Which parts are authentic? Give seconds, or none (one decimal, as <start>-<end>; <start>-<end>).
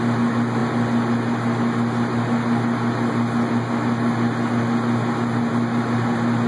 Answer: 0.0-6.5